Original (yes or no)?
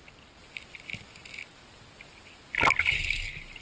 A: yes